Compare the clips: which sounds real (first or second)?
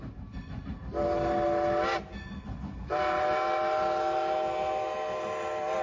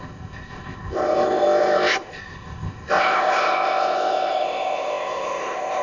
first